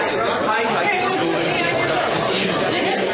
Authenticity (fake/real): fake